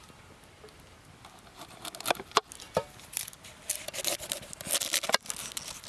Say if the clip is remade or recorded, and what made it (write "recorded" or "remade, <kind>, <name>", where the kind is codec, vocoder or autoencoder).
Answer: recorded